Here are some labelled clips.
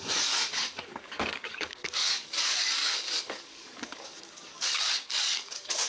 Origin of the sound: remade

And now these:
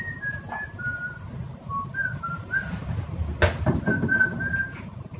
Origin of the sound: recorded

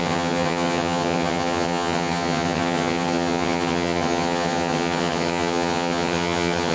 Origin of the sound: remade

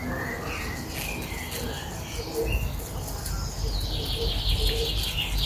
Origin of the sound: recorded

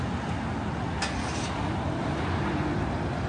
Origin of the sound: recorded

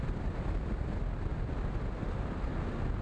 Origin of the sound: recorded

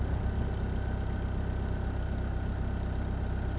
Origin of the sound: recorded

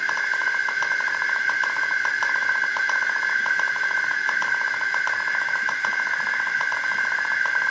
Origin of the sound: recorded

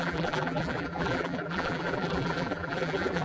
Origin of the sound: remade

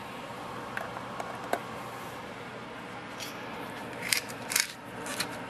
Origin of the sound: remade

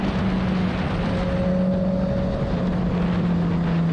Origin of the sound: recorded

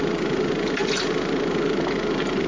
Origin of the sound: recorded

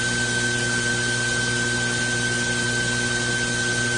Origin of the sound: recorded